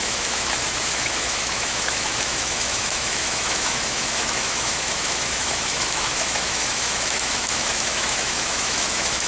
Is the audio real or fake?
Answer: fake